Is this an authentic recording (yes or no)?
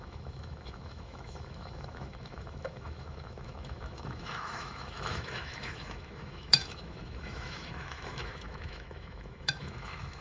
no